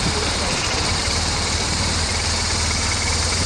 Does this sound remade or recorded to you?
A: remade